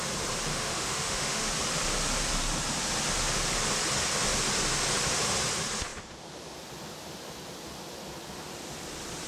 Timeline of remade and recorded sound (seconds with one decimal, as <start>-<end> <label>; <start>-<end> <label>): 0.0-0.5 recorded; 0.5-1.5 remade; 1.5-9.3 recorded